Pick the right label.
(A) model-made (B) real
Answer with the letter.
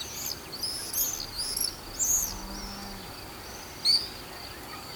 B